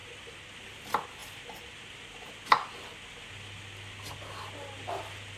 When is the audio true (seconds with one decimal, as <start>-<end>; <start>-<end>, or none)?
0.0-5.4